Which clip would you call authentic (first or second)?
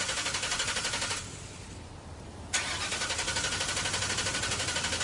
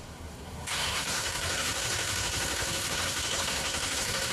first